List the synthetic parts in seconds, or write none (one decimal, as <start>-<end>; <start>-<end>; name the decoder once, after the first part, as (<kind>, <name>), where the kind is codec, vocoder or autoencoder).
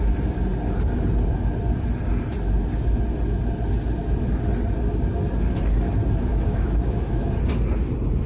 6.3-7.3 (autoencoder, DAC-VAE)